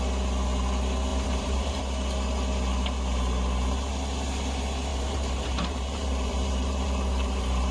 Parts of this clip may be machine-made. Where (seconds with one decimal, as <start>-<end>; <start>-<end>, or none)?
1.1-1.8; 4.9-7.7